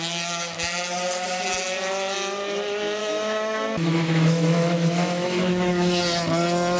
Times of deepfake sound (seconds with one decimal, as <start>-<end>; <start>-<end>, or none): 3.0-6.0